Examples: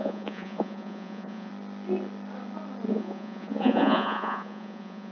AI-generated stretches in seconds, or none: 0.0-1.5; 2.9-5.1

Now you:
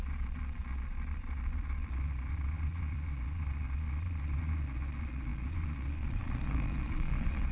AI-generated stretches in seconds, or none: 0.0-7.5

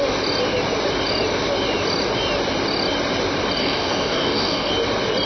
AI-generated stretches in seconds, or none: 3.6-4.7